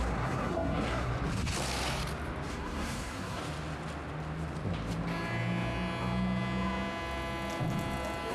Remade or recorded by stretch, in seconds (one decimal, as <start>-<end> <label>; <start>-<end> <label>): 0.0-1.1 remade; 1.1-2.5 recorded; 2.5-3.4 remade; 3.4-8.3 recorded

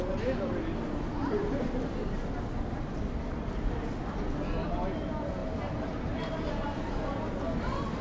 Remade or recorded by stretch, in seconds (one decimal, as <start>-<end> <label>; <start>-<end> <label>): 0.0-8.0 recorded

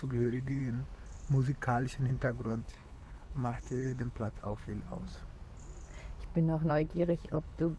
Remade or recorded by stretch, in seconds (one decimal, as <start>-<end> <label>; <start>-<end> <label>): 0.0-0.6 remade; 0.6-2.1 recorded; 2.1-4.7 remade; 4.7-6.7 recorded; 6.7-7.8 remade

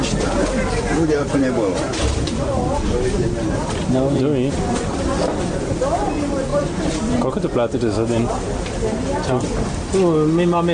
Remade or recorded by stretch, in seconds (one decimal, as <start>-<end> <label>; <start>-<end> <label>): 0.0-6.5 recorded; 6.5-7.3 remade; 7.3-10.7 recorded

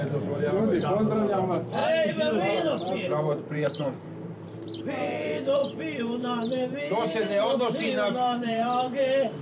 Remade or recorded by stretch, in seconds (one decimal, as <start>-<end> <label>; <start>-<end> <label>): 0.0-9.4 remade